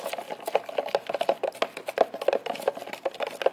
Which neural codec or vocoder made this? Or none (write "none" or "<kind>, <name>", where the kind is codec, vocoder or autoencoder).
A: none